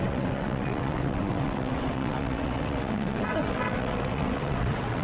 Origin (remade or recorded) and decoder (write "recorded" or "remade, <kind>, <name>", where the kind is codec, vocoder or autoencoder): remade, vocoder, WaveNeXt